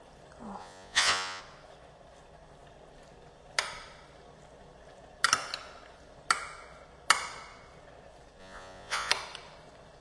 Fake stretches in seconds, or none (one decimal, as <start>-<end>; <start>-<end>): 0.6-1.4; 8.4-9.1